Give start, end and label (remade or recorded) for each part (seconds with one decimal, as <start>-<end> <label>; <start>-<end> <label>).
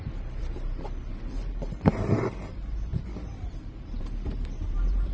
0.0-0.4 remade; 0.4-1.5 recorded; 1.5-2.9 remade; 2.9-3.8 recorded; 3.8-5.1 remade